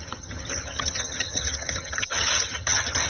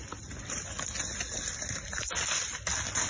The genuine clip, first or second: second